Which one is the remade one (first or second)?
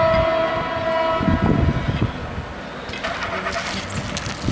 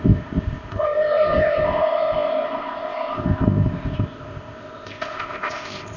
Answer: second